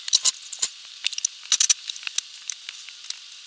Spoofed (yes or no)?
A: no